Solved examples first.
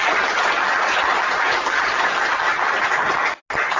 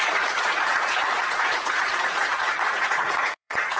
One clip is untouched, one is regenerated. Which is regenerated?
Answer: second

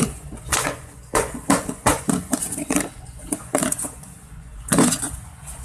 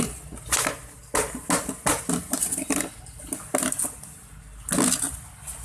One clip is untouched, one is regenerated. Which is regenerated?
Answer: first